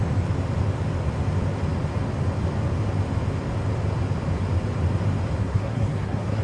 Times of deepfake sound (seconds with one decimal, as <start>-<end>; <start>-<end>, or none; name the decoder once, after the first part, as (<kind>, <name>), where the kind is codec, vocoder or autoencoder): 5.4-6.4 (codec, SNAC)